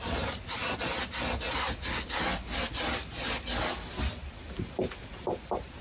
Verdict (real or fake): real